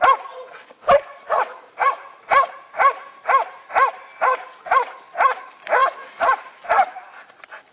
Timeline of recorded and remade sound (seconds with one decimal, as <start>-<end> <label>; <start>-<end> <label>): 0.0-1.3 recorded; 1.3-2.2 remade; 2.2-5.8 recorded; 5.8-6.4 remade; 6.4-7.7 recorded